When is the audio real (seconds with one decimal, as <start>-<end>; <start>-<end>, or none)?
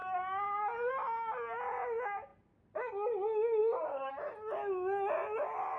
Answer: 0.9-2.3; 2.9-3.6; 4.1-5.8